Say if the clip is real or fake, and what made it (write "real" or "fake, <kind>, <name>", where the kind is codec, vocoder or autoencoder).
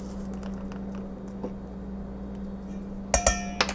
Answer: real